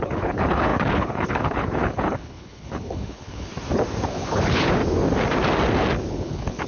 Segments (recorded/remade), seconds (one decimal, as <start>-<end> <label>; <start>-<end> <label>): 0.0-3.5 remade; 3.5-4.1 recorded; 4.1-4.8 remade; 4.8-6.1 recorded; 6.1-6.7 remade